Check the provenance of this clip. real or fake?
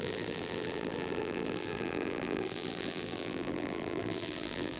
fake